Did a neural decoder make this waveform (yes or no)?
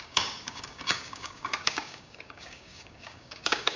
yes